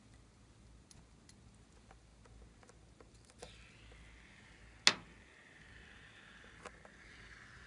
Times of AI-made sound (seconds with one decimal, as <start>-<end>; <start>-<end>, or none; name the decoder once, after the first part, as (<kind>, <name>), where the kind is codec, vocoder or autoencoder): none